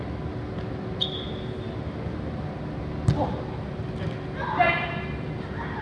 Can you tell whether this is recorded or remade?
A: recorded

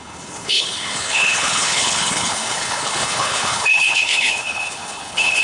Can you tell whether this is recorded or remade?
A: remade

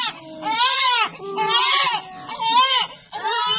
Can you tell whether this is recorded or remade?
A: recorded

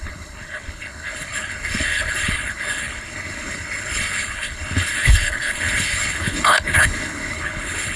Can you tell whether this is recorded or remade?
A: remade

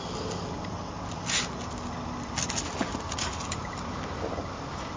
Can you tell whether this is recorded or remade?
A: recorded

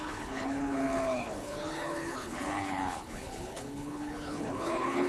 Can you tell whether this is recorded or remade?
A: remade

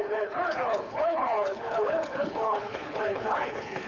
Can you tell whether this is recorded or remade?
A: remade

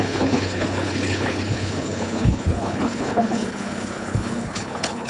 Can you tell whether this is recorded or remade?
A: remade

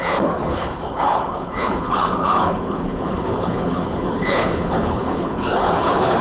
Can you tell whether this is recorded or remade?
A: remade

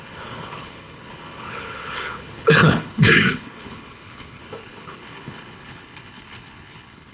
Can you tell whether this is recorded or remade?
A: remade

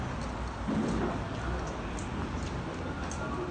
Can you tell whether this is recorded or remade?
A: recorded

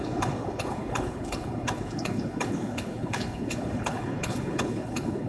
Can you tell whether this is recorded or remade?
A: remade